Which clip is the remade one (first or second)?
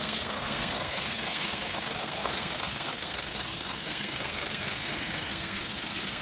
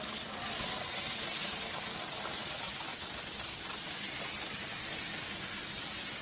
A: first